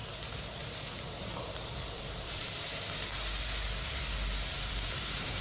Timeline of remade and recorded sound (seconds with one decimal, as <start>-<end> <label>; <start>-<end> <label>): 0.0-2.7 remade; 2.7-4.7 recorded; 4.7-5.4 remade